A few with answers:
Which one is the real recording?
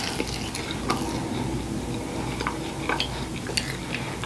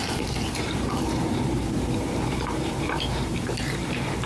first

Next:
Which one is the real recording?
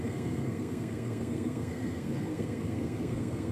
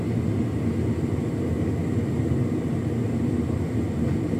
second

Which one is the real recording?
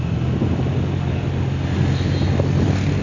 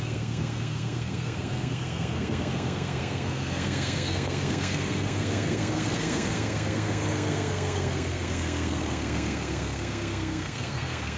first